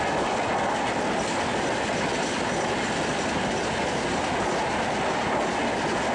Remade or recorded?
recorded